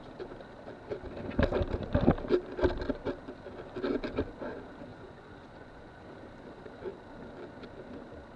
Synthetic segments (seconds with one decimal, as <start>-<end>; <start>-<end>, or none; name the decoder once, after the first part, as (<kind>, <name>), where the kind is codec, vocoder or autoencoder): 4.9-6.0 (vocoder, Vocos)